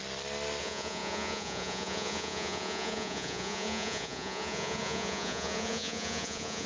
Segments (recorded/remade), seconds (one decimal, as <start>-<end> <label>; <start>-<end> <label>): 0.0-0.6 recorded; 0.6-6.7 remade